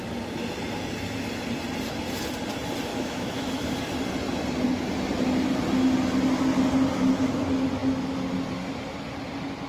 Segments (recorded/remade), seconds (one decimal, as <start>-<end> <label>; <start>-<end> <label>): 0.0-2.9 recorded; 2.9-3.8 remade; 3.8-9.7 recorded